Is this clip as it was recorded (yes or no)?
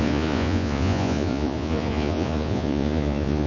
no